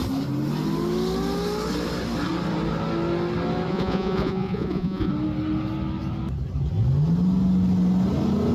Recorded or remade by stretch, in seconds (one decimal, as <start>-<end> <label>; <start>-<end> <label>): 0.0-3.7 recorded; 3.7-5.1 remade; 5.1-8.5 recorded